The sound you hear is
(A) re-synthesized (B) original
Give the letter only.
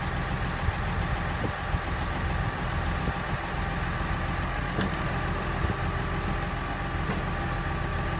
B